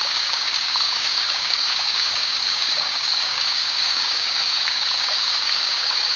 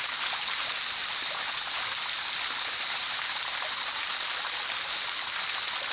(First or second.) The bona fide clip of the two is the second